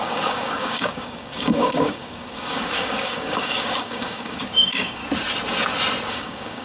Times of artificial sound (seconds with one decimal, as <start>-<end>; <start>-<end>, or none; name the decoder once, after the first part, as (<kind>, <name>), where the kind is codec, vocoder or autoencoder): 0.0-5.0 (codec, DAC); 6.1-6.6